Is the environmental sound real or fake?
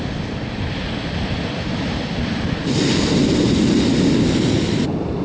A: real